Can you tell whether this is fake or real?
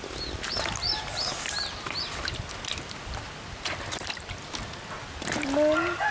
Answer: real